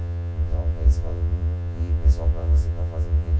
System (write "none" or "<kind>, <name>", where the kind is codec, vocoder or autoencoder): vocoder, Vocos